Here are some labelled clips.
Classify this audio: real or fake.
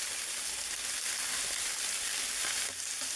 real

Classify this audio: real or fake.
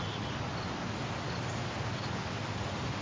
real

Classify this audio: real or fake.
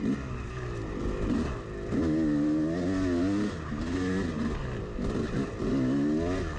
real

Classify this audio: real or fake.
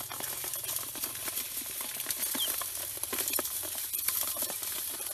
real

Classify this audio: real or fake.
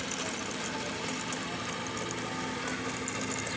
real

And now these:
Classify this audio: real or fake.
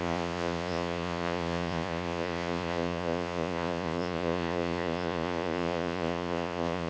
fake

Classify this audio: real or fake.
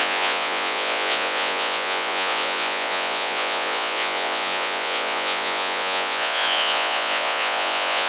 fake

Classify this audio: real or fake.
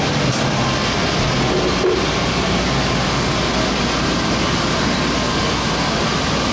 real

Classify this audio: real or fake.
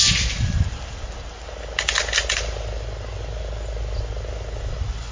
real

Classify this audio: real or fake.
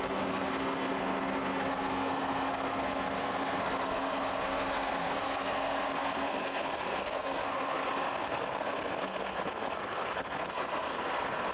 fake